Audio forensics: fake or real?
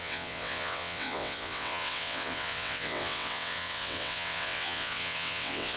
fake